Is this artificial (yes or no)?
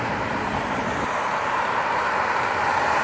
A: yes